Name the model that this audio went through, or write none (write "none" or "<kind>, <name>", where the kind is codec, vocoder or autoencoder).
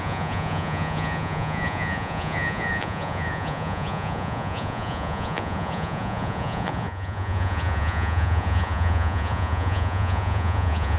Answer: vocoder, Vocos